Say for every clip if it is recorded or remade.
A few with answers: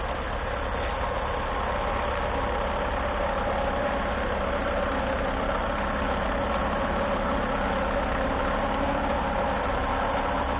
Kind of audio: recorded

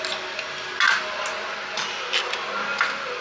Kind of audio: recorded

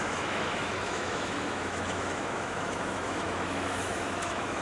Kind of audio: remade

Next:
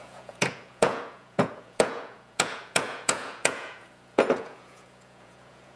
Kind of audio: remade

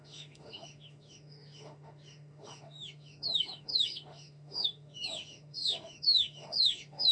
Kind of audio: remade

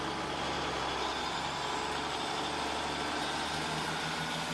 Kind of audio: recorded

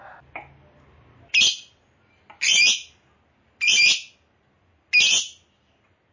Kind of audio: recorded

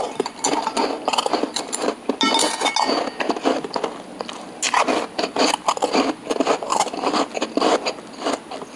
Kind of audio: recorded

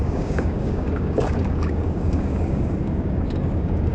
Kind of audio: remade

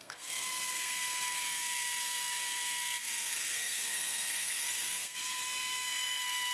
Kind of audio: remade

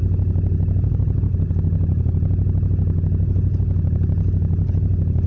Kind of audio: recorded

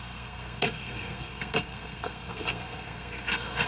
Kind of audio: remade